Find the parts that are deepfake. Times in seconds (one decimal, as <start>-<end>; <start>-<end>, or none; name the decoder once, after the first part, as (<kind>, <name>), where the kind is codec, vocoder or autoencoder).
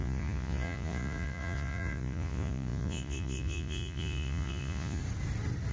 0.0-5.0 (vocoder, Vocos)